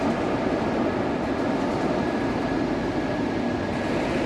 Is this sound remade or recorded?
recorded